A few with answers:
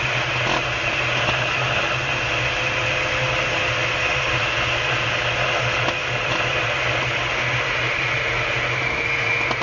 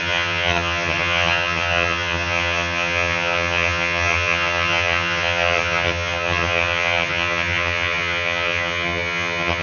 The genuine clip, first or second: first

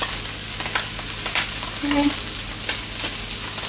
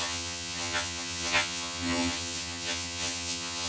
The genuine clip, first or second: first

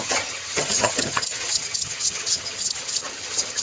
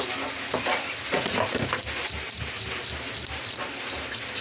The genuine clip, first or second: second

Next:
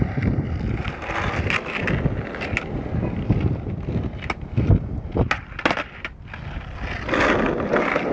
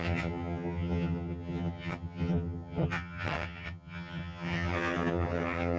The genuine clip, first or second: first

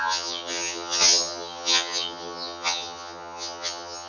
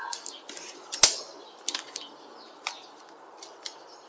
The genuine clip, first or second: second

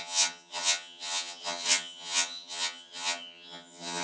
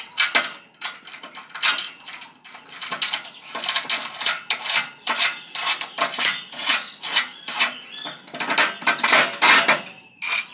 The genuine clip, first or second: second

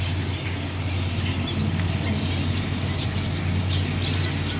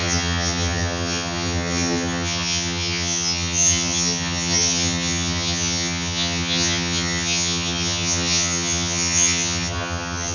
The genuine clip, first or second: first